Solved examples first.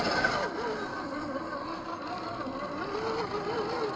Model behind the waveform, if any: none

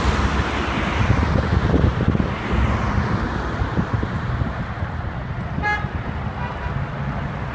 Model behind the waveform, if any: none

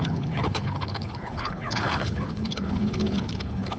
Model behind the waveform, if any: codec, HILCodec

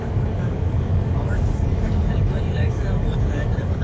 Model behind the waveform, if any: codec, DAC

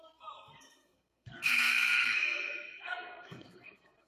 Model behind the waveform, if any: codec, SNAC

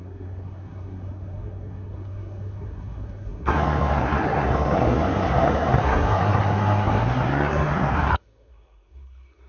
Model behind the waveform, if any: codec, SNAC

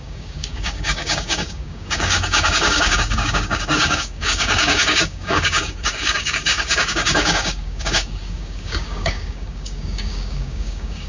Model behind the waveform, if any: codec, DAC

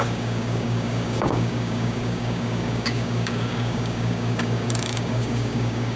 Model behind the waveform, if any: codec, DAC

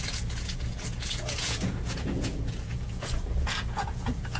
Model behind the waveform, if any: vocoder, Vocos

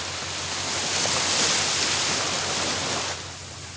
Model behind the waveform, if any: none